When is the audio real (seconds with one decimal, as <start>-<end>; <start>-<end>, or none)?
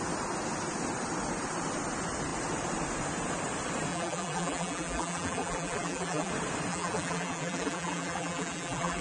0.0-3.9; 6.3-6.7